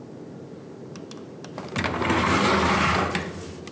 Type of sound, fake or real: real